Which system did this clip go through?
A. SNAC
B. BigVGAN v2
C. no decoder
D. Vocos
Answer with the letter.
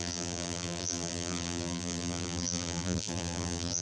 B